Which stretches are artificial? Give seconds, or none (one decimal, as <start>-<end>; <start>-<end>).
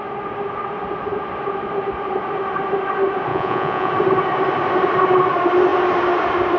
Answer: 3.3-3.9